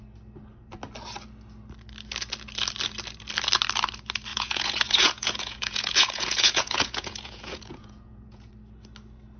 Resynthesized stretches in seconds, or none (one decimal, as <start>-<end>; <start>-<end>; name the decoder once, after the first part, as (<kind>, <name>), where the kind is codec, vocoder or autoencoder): 4.3-8.5 (vocoder, Vocos)